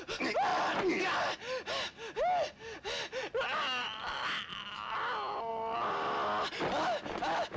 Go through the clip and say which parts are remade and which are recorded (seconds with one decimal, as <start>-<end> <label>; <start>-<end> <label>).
0.0-7.6 recorded